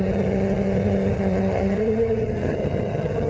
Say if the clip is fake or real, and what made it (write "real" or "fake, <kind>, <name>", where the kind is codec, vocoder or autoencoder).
fake, vocoder, HiFi-GAN